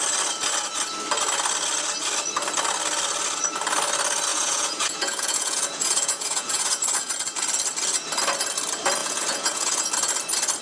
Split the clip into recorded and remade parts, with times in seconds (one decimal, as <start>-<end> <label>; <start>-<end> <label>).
0.0-4.3 recorded; 4.3-7.1 remade; 7.1-9.0 recorded; 9.0-9.9 remade; 9.9-10.6 recorded

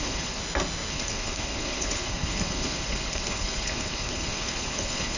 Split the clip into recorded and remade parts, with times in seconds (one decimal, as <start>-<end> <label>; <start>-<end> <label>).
0.0-0.4 remade; 0.4-0.9 recorded; 0.9-5.2 remade